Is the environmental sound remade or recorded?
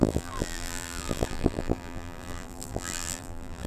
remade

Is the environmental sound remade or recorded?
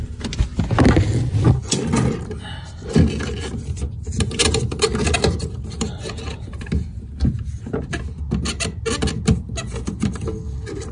recorded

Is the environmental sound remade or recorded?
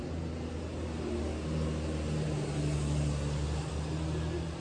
recorded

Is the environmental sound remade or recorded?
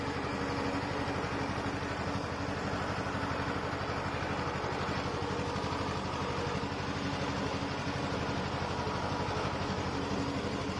recorded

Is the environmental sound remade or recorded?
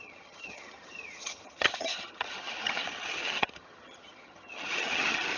remade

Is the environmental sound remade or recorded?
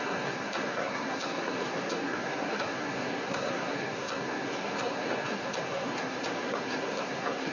remade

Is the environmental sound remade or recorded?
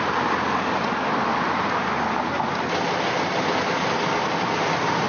recorded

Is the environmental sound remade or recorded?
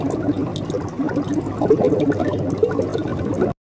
recorded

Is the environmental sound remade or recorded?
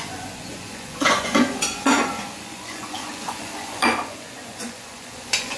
remade